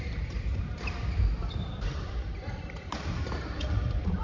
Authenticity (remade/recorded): remade